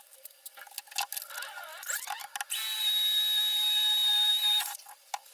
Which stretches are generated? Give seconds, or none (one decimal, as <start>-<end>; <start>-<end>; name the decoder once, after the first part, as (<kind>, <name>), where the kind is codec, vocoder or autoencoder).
none